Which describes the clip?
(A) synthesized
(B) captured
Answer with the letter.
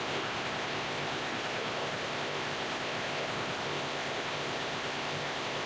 A